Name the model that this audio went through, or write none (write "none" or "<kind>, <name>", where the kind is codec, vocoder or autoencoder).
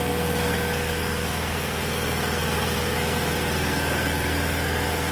codec, SNAC